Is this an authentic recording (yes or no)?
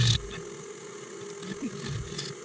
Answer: yes